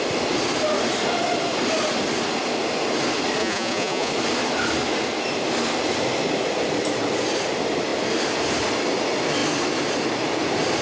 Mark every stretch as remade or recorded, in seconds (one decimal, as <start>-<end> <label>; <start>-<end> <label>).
0.0-3.4 recorded; 3.4-4.1 remade; 4.1-10.8 recorded